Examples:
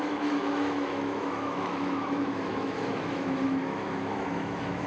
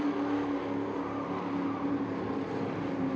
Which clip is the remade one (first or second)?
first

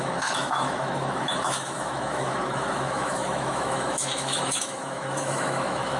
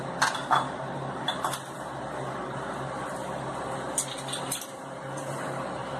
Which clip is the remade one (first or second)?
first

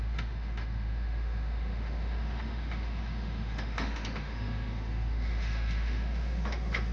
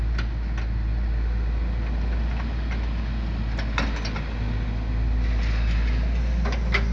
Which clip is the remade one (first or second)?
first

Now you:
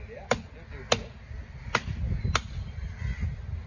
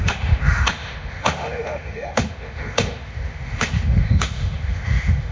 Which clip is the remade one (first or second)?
second